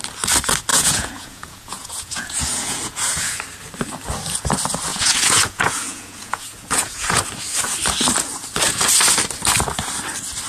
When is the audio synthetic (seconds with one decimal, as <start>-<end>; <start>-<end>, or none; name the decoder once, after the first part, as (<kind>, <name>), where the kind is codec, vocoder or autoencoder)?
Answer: 0.7-3.4 (vocoder, Vocos); 4.9-7.2